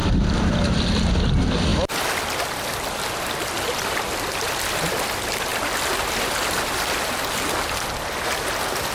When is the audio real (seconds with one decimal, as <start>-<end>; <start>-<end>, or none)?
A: 0.0-8.9